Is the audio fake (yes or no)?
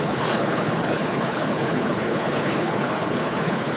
yes